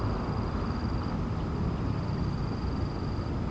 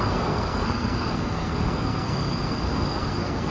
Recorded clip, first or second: first